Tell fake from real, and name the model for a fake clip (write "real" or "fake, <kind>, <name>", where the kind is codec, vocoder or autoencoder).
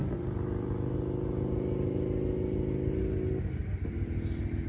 real